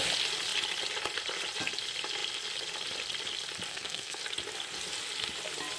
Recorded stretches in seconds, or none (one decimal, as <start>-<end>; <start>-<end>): 0.0-3.7; 4.2-5.8